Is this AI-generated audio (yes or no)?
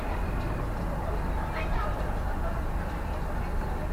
no